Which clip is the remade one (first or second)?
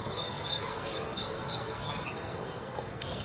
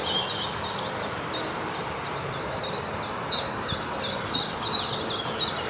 first